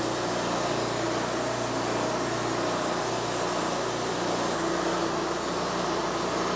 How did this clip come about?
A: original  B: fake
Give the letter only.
A